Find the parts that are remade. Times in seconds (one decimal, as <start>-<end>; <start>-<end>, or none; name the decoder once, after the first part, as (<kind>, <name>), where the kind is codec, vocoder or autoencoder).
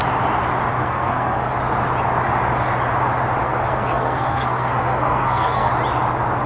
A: 0.8-1.5 (codec, SNAC); 3.4-5.7